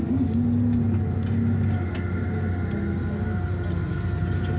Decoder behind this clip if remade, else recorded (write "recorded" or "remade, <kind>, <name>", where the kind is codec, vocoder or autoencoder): recorded